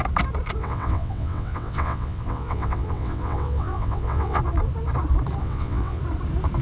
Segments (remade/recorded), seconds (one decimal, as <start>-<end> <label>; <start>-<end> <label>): 0.0-0.6 recorded; 0.6-4.4 remade; 4.4-5.4 recorded; 5.4-6.0 remade; 6.0-6.6 recorded